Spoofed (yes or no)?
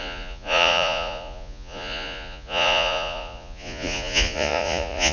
yes